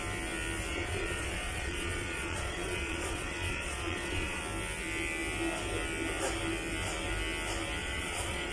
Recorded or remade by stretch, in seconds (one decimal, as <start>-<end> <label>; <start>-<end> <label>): 0.0-0.7 recorded; 0.7-4.4 remade; 4.4-7.8 recorded; 7.8-8.5 remade